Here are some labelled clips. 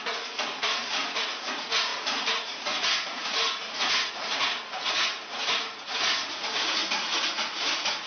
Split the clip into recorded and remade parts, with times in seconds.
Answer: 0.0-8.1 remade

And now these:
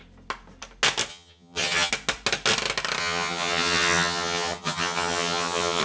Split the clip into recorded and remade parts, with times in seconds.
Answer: 0.0-1.1 recorded; 1.1-1.9 remade; 1.9-3.0 recorded; 3.0-5.8 remade

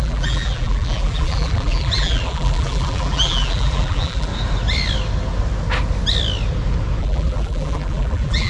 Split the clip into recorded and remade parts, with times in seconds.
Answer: 0.0-4.3 remade; 4.3-7.0 recorded; 7.0-8.5 remade